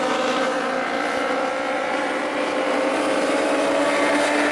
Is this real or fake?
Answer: fake